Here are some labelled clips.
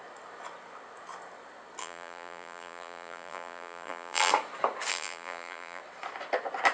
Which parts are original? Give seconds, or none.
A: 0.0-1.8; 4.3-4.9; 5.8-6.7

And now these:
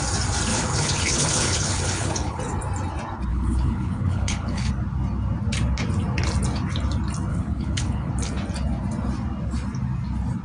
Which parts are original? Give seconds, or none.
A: 0.0-0.5; 2.4-3.3; 4.7-7.3; 8.1-10.4

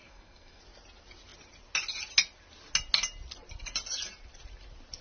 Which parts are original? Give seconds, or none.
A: 0.6-5.0

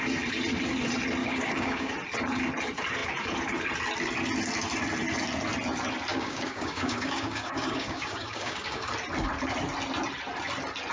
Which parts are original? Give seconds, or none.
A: 0.0-1.2; 1.9-6.1; 8.9-10.9

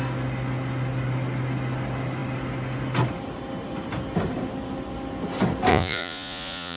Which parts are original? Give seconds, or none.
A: 0.0-5.7